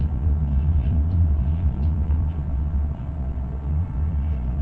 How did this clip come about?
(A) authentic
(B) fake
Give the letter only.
B